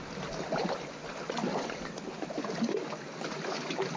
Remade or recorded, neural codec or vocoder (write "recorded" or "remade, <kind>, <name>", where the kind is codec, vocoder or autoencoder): recorded